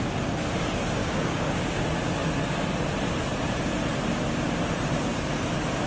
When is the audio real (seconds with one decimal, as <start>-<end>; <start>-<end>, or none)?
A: 0.0-1.0; 1.8-5.9

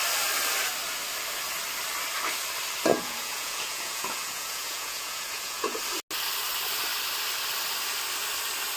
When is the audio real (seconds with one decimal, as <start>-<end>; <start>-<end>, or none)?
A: 0.0-2.9; 5.8-8.8

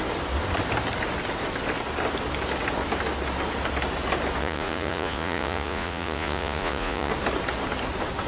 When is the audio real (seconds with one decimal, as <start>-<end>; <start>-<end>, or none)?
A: 0.0-4.4; 7.1-8.3

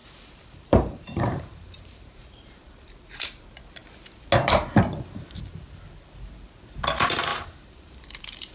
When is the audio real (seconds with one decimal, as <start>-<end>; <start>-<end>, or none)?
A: 3.4-7.3

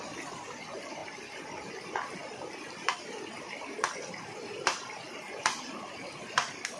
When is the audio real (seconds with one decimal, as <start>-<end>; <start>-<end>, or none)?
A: 0.0-6.8

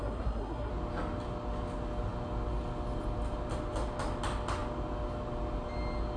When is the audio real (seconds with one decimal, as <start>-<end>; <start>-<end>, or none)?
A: 0.7-6.2

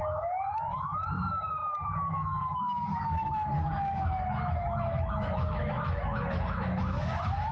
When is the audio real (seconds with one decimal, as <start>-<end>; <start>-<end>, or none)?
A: none

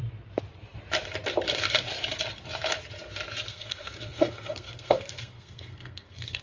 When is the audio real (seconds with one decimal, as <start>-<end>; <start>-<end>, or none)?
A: 0.0-3.5